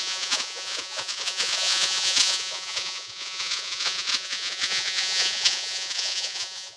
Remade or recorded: remade